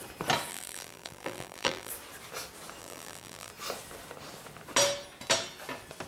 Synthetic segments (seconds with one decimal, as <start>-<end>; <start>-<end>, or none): 0.5-1.9; 2.8-3.5